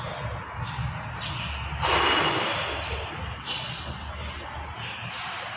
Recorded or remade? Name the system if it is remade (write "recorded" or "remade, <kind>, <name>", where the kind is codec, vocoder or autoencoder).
recorded